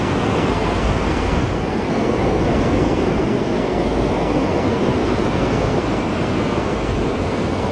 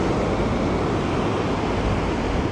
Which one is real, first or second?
second